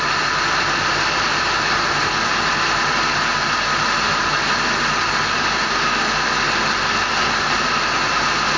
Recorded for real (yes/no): yes